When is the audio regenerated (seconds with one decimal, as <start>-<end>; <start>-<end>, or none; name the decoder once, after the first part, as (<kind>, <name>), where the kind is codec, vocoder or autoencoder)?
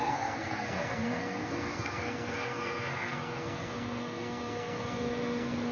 0.0-5.7 (codec, SNAC)